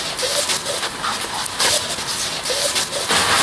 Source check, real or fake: real